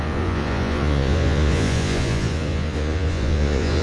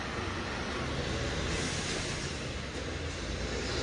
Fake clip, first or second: first